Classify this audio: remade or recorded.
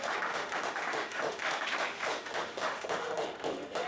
remade